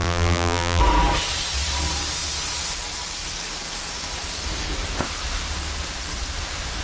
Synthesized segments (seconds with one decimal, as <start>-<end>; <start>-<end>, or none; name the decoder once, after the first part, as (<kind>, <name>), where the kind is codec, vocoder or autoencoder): 0.0-0.8 (vocoder, BigVGAN v2)